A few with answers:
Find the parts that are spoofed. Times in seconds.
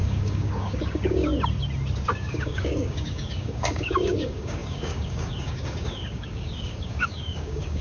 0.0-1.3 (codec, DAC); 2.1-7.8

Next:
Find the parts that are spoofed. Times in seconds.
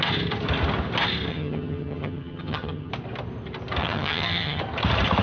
1.3-2.9 (vocoder, HiFi-GAN); 3.8-4.6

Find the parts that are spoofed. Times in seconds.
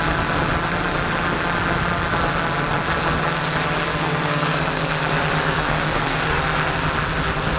3.9-4.8 (codec, SNAC); 5.4-6.4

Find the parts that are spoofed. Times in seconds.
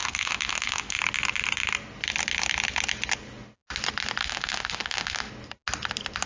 0.0-1.0 (autoencoder, DAC-VAE); 4.2-5.3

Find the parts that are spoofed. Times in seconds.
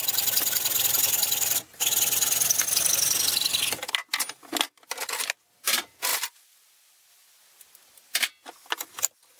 none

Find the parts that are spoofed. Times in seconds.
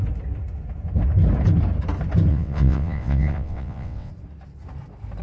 2.3-4.1 (vocoder, WaveNeXt)